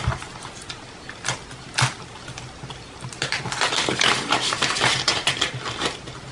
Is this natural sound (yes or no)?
yes